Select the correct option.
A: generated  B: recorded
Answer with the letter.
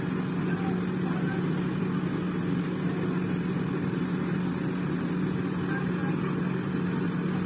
B